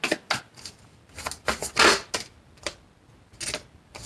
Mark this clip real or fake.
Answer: real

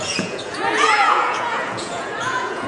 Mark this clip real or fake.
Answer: fake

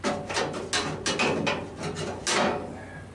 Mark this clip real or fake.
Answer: real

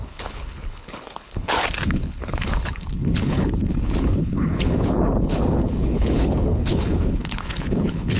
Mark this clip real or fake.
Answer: fake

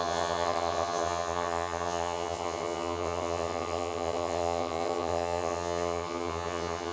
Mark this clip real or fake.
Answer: fake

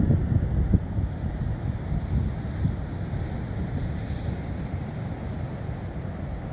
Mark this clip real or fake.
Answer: real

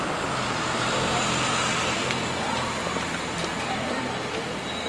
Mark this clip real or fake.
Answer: real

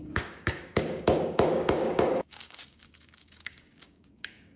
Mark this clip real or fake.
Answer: fake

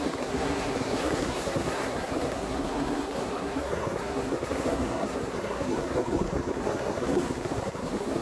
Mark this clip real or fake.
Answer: fake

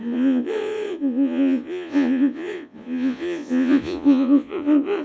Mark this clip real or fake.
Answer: fake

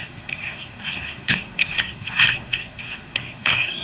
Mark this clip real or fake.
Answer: fake